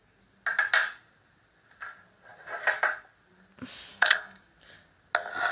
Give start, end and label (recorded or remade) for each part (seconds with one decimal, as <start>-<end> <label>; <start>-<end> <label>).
0.0-3.9 recorded; 3.9-4.5 remade; 4.5-5.5 recorded